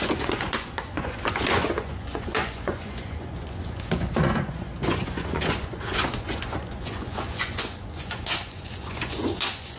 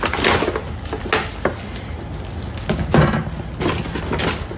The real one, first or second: second